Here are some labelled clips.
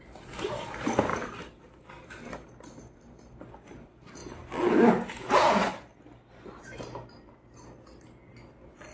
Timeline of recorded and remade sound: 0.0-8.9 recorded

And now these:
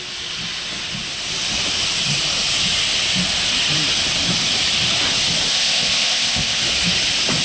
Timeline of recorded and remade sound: 0.0-5.5 recorded; 5.5-6.6 remade; 6.6-7.4 recorded

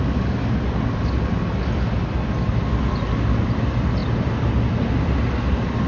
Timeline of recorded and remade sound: 0.0-5.9 recorded

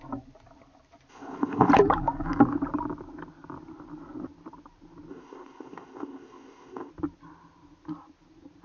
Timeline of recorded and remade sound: 0.0-1.1 recorded; 1.1-1.7 remade; 1.7-5.1 recorded; 5.1-6.9 remade; 6.9-8.6 recorded

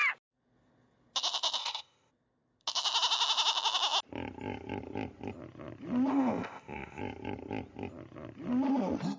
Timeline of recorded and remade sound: 0.0-1.6 recorded; 1.6-2.1 remade; 2.1-6.1 recorded; 6.1-7.0 remade; 7.0-9.2 recorded

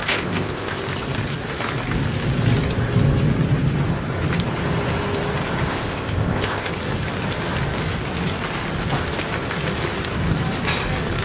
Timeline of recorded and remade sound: 0.0-0.7 remade; 0.7-5.7 recorded; 5.7-6.7 remade; 6.7-11.2 recorded

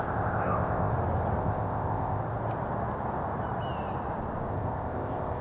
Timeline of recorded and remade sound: 0.0-0.9 remade; 0.9-1.4 recorded; 1.4-2.2 remade; 2.2-4.5 recorded; 4.5-5.4 remade

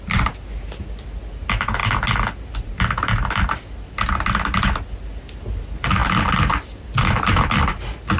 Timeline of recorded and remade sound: 0.0-8.2 recorded